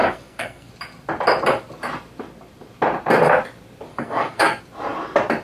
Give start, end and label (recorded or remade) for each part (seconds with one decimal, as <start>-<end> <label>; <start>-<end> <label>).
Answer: 0.0-0.7 remade; 0.7-3.9 recorded; 3.9-4.6 remade; 4.6-5.4 recorded